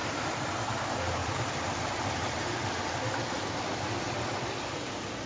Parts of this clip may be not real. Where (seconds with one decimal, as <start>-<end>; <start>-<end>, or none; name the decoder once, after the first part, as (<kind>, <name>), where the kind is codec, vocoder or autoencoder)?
0.0-0.5 (vocoder, BigVGAN v2); 1.2-4.4